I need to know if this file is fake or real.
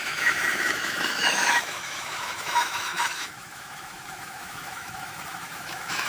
fake